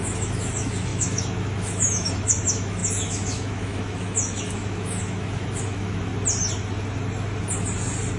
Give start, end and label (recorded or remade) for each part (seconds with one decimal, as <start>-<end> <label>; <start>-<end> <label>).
0.0-6.1 remade; 6.1-8.2 recorded